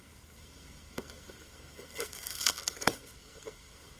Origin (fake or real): fake